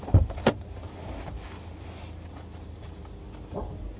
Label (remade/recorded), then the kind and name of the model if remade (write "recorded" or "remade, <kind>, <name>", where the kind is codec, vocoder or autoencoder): recorded